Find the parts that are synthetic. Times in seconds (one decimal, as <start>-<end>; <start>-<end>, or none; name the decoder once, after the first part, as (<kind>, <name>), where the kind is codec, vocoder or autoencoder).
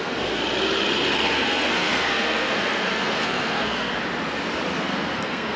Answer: 0.0-0.4 (codec, SNAC); 1.3-3.9; 4.8-5.6